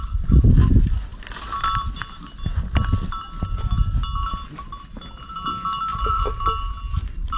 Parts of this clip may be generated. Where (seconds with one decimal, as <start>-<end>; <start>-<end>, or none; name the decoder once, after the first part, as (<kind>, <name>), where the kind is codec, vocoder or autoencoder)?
5.9-6.4 (vocoder, Vocos)